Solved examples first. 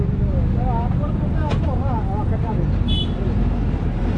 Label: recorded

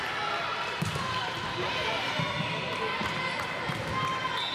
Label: recorded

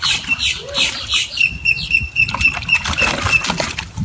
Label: recorded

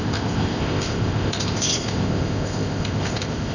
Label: remade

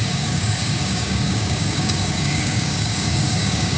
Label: remade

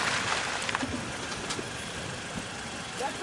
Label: remade